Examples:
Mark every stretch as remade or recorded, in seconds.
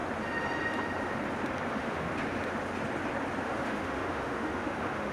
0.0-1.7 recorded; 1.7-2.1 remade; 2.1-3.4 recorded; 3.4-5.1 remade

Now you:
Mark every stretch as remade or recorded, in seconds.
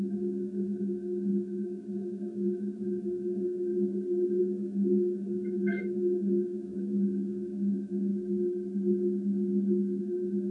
0.0-3.7 remade; 3.7-4.4 recorded; 4.4-8.1 remade; 8.1-10.0 recorded; 10.0-10.5 remade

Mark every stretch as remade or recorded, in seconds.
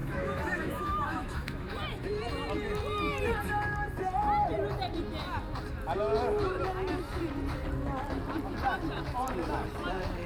0.0-1.7 remade; 1.7-10.3 recorded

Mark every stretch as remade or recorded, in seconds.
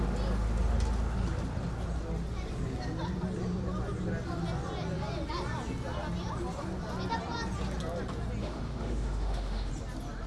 0.0-8.4 recorded; 8.4-9.7 remade; 9.7-10.3 recorded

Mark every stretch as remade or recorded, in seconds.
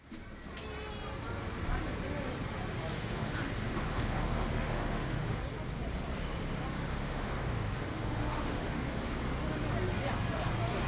0.0-2.9 recorded; 2.9-5.4 remade; 5.4-6.9 recorded; 6.9-9.2 remade; 9.2-10.9 recorded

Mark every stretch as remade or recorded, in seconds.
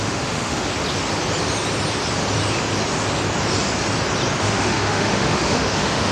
0.0-0.7 remade; 0.7-4.4 recorded; 4.4-6.1 remade